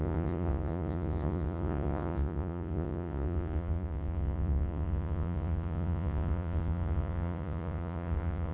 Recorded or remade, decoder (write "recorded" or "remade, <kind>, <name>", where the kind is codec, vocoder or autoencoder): remade, vocoder, Vocos